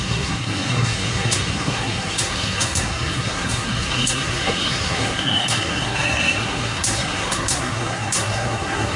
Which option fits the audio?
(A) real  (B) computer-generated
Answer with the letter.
B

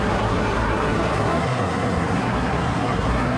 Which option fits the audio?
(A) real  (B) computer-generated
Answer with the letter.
B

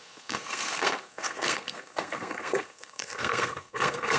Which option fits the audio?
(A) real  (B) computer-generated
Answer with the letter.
B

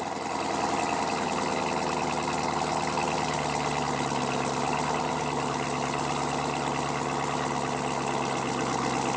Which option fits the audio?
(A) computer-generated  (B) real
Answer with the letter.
B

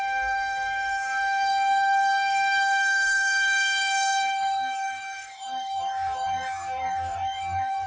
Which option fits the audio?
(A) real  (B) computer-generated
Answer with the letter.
B